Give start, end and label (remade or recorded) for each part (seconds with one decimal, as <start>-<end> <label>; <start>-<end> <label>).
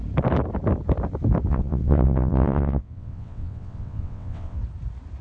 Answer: 0.0-1.5 recorded; 1.5-4.6 remade; 4.6-5.2 recorded